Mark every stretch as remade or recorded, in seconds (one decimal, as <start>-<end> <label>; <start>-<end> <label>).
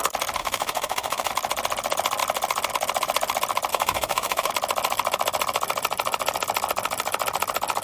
0.0-0.4 recorded; 0.4-1.3 remade; 1.3-3.7 recorded; 3.7-4.5 remade; 4.5-7.8 recorded